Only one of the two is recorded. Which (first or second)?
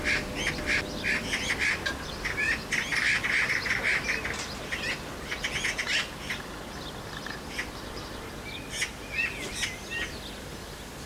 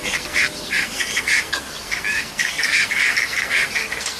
first